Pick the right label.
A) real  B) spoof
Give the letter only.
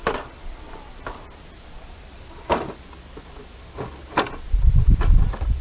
A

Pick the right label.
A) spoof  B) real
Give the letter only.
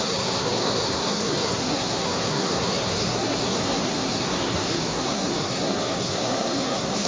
A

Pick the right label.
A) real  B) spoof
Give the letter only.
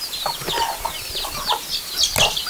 A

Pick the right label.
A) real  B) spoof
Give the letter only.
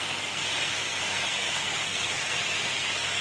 B